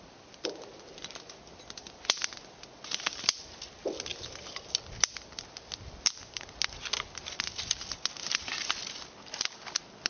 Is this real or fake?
real